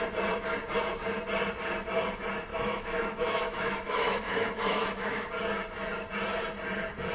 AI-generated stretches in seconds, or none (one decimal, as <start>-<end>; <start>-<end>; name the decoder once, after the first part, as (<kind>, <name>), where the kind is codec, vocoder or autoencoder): 2.5-5.3 (autoencoder, DAC-VAE)